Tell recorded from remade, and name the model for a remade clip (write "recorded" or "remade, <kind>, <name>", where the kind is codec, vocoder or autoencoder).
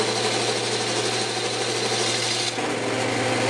recorded